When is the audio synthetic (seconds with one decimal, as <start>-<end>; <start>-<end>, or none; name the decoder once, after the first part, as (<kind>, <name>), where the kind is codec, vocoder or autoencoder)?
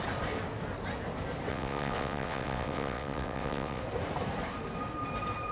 1.5-3.8 (vocoder, WaveNeXt)